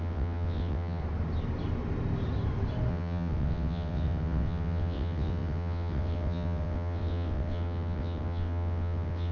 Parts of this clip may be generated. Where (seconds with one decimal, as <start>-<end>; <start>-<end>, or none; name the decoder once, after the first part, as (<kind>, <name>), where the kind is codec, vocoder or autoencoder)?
0.0-1.0 (vocoder, WaveNeXt); 2.9-9.3